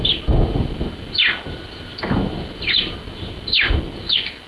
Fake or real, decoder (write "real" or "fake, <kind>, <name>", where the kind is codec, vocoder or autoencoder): real